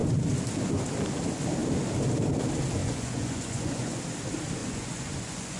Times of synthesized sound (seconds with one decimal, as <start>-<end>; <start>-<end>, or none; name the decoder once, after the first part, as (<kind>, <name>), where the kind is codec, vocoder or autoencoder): 2.8-4.0 (vocoder, Vocos); 4.6-5.6